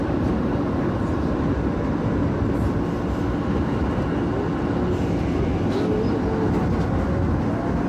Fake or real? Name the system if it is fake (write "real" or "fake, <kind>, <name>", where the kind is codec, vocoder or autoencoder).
real